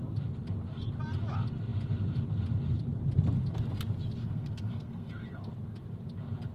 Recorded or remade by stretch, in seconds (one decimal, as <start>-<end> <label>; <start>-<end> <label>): 0.0-4.2 recorded; 4.2-5.1 remade; 5.1-6.5 recorded